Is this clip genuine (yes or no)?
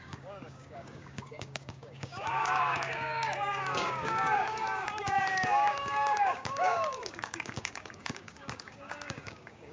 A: no